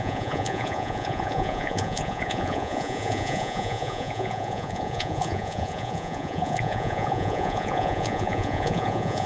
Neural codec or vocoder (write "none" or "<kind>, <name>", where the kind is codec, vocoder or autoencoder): vocoder, Vocos